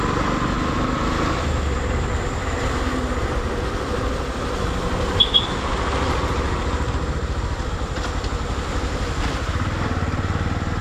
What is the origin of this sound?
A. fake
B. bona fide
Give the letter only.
B